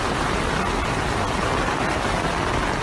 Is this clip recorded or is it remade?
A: recorded